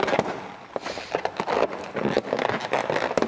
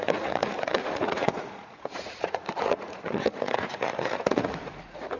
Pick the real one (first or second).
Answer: first